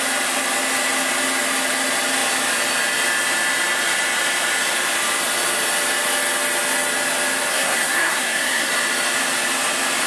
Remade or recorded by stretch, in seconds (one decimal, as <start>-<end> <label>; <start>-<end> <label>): 0.0-7.5 recorded; 7.5-8.7 remade; 8.7-10.1 recorded